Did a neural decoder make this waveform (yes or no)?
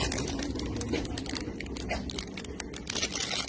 no